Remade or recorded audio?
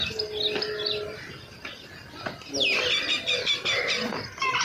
recorded